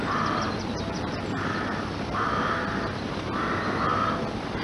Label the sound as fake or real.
real